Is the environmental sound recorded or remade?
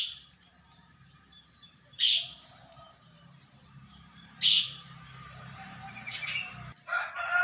remade